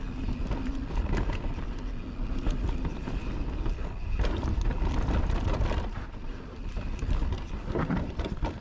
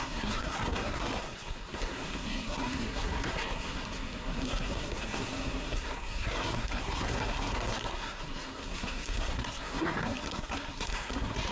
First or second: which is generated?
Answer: second